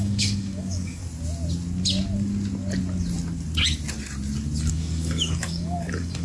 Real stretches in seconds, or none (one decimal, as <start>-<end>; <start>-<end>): 1.0-4.7